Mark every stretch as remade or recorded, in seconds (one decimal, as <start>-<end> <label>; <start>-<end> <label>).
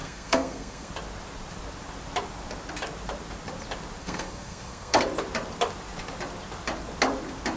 0.0-0.9 remade; 0.9-4.0 recorded; 4.0-5.0 remade; 5.0-7.6 recorded